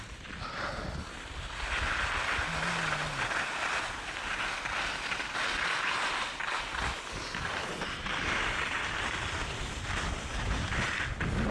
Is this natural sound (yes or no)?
yes